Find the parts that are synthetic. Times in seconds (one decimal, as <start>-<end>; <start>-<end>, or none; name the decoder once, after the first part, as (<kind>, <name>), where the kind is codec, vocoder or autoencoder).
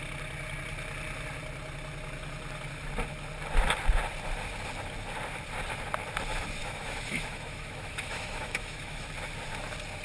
6.6-9.1 (autoencoder, DAC-VAE)